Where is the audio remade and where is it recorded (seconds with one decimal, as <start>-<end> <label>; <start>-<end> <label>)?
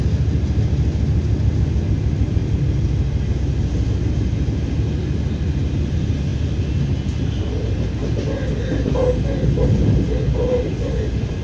0.0-11.4 recorded